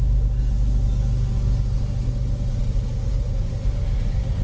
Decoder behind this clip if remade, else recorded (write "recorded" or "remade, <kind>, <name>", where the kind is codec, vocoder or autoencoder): recorded